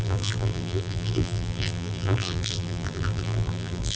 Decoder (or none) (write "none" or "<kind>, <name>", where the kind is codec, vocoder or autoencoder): vocoder, BigVGAN v2